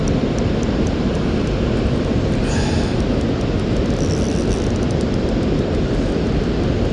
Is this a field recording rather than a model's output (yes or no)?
yes